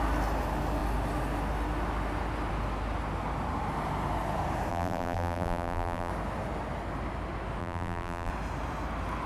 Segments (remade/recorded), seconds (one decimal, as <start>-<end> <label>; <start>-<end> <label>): 0.0-4.7 recorded; 4.7-6.1 remade; 6.1-7.6 recorded; 7.6-8.3 remade; 8.3-9.3 recorded